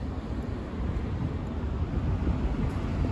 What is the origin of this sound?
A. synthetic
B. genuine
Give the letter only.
B